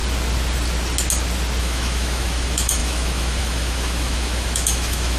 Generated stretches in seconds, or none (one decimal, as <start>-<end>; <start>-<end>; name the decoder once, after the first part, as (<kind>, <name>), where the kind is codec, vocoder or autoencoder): 1.6-5.2 (autoencoder, DAC-VAE)